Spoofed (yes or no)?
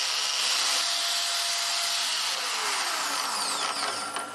no